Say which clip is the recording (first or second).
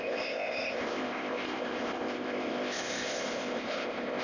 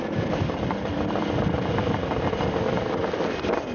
second